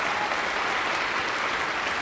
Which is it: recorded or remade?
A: recorded